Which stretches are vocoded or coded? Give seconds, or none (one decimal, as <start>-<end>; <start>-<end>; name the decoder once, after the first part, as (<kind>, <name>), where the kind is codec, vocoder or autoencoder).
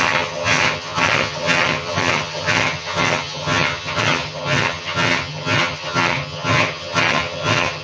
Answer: 0.0-7.8 (vocoder, HiFi-GAN)